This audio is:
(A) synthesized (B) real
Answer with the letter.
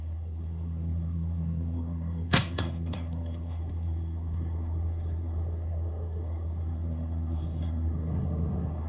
A